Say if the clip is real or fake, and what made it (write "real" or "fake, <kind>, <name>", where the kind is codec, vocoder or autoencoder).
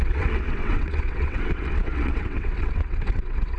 fake, vocoder, WaveNeXt